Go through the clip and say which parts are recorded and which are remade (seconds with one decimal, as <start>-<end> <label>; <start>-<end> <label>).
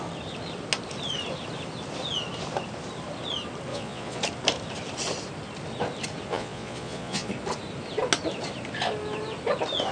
0.0-3.7 recorded; 3.7-4.2 remade; 4.2-6.3 recorded; 6.3-7.3 remade; 7.3-9.9 recorded